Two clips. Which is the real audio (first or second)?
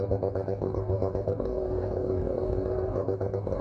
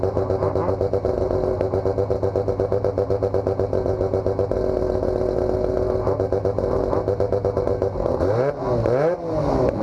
second